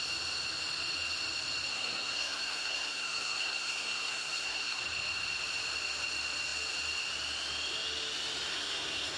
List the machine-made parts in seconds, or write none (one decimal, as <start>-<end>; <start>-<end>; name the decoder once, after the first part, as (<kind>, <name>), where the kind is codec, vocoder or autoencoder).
1.7-4.8 (codec, SNAC); 8.5-9.2